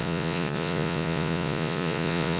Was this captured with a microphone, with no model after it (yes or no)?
no